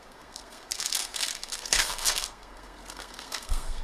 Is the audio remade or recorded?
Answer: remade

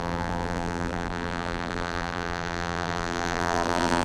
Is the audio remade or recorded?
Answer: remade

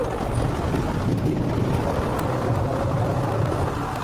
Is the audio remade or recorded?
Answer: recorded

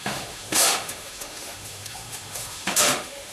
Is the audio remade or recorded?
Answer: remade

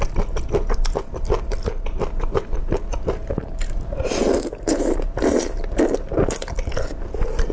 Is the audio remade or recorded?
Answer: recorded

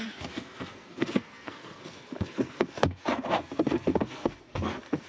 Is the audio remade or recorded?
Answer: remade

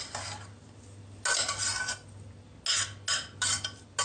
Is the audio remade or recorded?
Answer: recorded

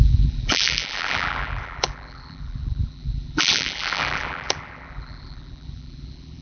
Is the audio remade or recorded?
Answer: remade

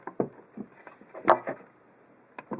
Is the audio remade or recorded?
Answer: recorded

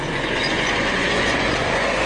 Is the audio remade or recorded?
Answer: remade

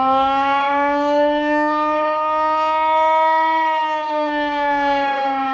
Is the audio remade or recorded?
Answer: remade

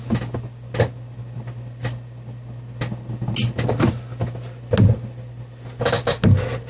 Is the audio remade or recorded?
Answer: recorded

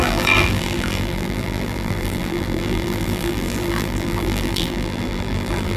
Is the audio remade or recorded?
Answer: remade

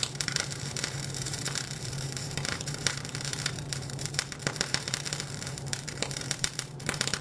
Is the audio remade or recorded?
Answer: remade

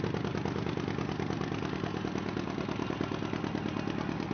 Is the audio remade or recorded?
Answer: recorded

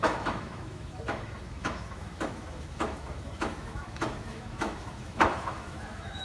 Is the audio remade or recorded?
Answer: remade